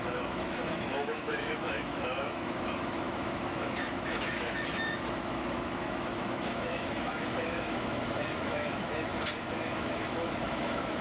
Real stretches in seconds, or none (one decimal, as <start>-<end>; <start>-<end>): 9.1-9.8